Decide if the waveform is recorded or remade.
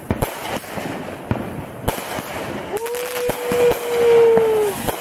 recorded